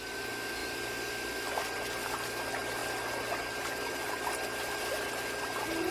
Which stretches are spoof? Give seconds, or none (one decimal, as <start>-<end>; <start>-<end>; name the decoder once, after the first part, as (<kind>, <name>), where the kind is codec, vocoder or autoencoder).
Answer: 0.6-1.6 (vocoder, BigVGAN v2)